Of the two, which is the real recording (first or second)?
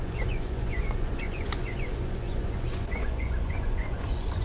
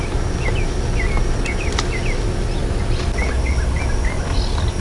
second